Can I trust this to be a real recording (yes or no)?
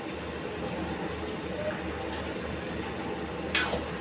yes